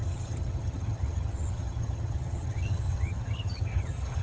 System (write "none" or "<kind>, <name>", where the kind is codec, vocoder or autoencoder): vocoder, HiFi-GAN